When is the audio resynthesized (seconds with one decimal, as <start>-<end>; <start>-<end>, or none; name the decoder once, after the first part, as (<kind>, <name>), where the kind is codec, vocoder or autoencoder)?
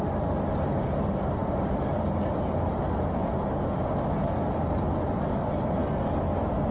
none